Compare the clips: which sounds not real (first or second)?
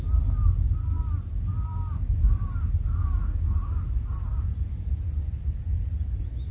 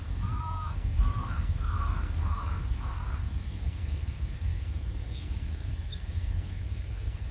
second